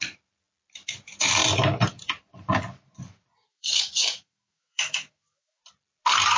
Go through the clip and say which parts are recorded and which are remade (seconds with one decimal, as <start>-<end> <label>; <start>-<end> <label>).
0.0-3.5 recorded; 3.5-5.6 remade; 5.6-6.4 recorded